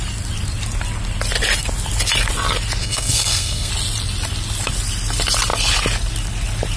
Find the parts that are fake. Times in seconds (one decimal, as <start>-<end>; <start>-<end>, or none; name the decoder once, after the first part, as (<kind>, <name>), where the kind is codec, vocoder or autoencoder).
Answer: 2.8-3.7 (codec, SNAC)